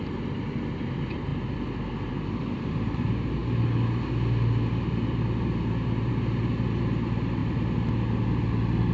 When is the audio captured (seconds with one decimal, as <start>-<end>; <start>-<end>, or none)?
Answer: 1.3-2.1; 3.4-6.1